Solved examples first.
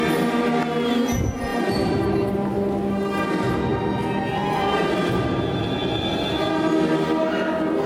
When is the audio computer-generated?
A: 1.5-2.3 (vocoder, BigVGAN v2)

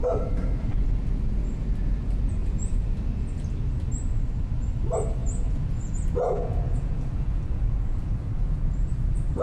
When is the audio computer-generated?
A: 2.4-2.9 (vocoder, Vocos); 5.2-8.9

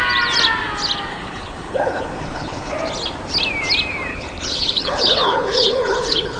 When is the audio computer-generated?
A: 1.1-2.7 (codec, HILCodec); 4.1-6.4